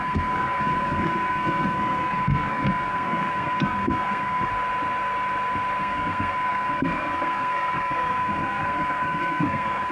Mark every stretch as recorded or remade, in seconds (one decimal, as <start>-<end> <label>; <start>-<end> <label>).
0.0-4.5 remade; 4.5-5.8 recorded; 5.8-9.9 remade